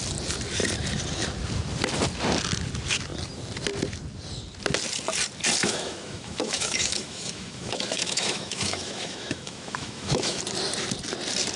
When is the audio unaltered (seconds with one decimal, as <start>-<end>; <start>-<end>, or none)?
0.0-5.6; 10.4-11.6